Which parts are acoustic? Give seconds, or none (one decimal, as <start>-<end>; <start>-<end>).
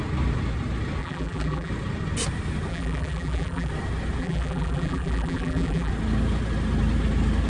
0.0-1.0; 1.7-2.7; 3.7-4.2; 5.9-7.5